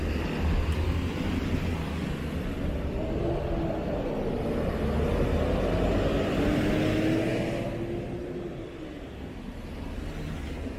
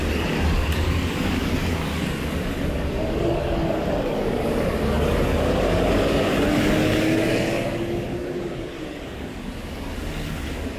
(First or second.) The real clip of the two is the first